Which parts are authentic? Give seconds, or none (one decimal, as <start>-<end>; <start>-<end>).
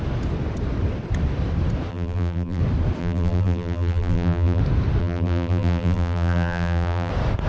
0.0-1.9; 2.6-3.0; 4.6-5.0; 7.1-7.5